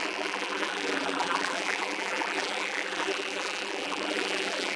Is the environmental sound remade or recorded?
remade